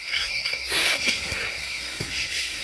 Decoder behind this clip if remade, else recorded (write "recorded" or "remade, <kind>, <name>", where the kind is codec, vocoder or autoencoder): remade, codec, SNAC